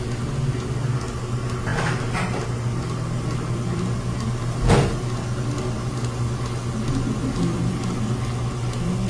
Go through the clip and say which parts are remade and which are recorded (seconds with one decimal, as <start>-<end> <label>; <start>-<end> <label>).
0.0-9.1 recorded

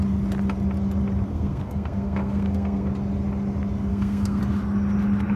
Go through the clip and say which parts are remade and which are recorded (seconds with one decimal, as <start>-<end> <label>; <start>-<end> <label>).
0.0-1.3 recorded; 1.3-2.9 remade; 2.9-3.9 recorded; 3.9-4.4 remade; 4.4-5.4 recorded

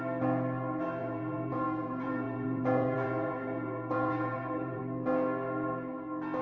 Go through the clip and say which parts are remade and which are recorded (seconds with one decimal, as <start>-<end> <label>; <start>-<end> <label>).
0.0-1.0 recorded; 1.0-4.8 remade; 4.8-6.4 recorded

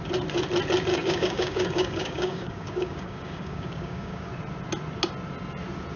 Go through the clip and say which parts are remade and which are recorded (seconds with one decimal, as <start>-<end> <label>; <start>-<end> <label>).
0.0-0.9 recorded; 0.9-4.3 remade; 4.3-6.0 recorded

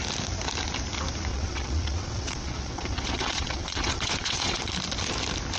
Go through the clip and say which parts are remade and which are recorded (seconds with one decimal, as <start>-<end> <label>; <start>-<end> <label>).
0.0-1.3 recorded; 1.3-4.7 remade; 4.7-5.6 recorded

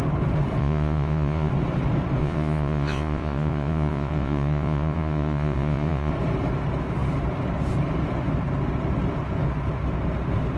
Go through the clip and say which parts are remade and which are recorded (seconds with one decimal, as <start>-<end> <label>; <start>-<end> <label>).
0.0-0.6 recorded; 0.6-1.5 remade; 1.5-2.2 recorded; 2.2-6.1 remade; 6.1-10.6 recorded

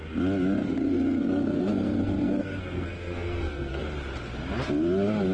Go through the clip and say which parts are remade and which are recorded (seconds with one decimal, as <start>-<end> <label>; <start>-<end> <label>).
0.0-0.6 recorded; 0.6-3.8 remade; 3.8-5.3 recorded